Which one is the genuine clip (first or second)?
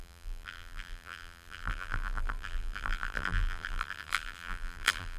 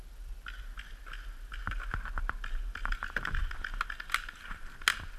second